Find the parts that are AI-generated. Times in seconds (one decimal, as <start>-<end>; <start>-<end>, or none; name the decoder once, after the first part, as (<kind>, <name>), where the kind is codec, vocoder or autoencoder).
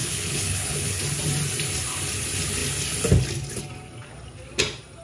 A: 0.0-1.0 (codec, HILCodec)